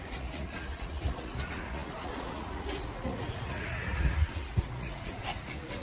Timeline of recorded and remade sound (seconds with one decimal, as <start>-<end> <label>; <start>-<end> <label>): 0.0-5.8 remade